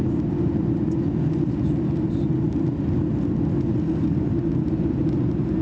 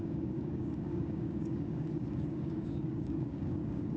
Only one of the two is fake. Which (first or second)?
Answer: second